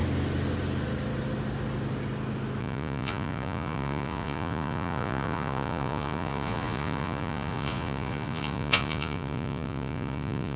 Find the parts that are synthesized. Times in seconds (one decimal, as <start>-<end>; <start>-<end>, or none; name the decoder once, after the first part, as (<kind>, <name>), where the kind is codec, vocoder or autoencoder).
2.6-10.6 (vocoder, Vocos)